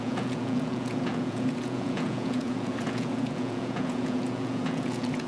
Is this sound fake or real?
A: fake